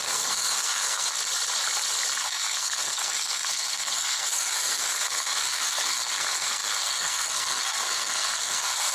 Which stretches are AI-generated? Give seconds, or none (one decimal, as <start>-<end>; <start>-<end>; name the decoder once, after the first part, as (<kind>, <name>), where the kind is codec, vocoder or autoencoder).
0.0-1.2 (codec, SNAC); 2.2-8.9